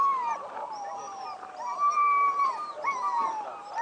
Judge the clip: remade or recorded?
remade